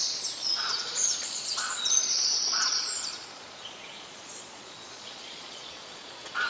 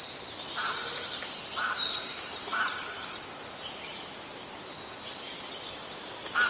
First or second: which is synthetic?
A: first